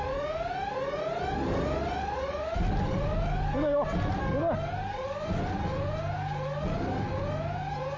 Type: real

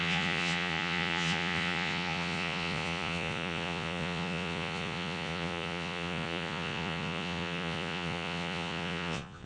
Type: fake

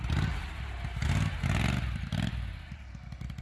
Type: real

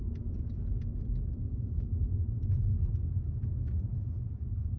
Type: real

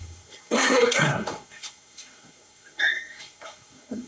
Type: fake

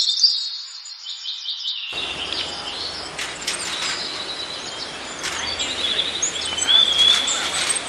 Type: real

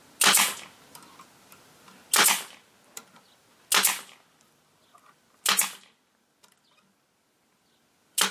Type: real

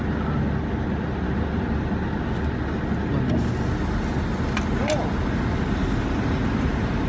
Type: real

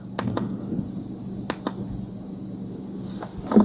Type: real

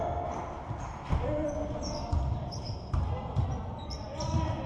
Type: real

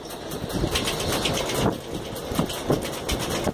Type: real